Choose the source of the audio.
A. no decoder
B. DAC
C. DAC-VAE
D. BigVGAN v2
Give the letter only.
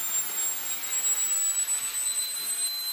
A